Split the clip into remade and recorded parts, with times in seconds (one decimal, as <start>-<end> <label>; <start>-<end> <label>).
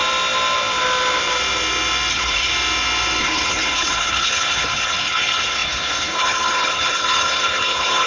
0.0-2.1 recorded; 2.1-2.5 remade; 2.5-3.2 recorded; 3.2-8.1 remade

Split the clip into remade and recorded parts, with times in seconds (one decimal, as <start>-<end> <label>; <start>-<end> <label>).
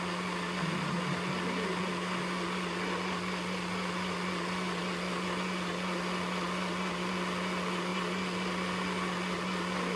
0.0-10.0 recorded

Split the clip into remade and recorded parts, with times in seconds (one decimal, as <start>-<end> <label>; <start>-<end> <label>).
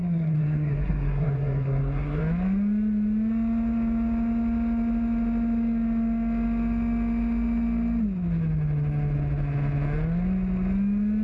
0.0-2.2 remade; 2.2-11.2 recorded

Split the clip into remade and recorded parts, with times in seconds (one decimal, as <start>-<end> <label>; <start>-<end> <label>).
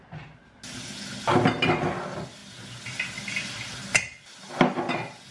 0.0-5.3 recorded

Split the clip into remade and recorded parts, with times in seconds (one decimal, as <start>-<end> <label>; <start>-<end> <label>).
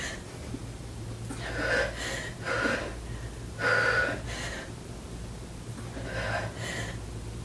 0.0-7.4 recorded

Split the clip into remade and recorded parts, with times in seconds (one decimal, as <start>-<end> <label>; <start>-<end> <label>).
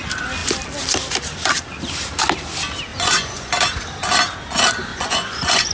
0.0-2.9 recorded; 2.9-3.5 remade; 3.5-4.9 recorded; 4.9-5.7 remade